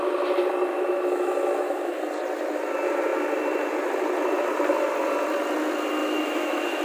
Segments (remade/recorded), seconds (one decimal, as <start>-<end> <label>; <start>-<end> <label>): 0.0-0.7 recorded; 0.7-2.0 remade; 2.0-6.0 recorded; 6.0-6.8 remade